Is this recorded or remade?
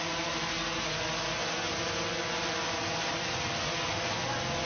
recorded